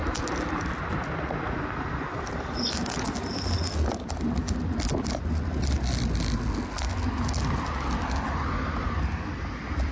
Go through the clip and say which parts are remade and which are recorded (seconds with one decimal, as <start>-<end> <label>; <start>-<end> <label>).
0.0-9.9 recorded